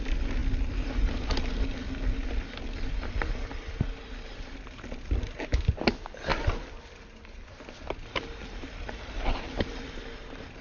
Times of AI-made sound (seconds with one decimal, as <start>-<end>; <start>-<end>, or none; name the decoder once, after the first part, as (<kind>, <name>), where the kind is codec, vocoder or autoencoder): none